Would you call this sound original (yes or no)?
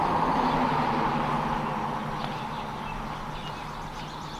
yes